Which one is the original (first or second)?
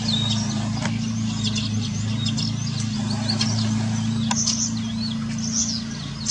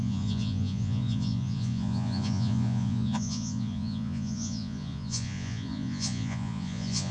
first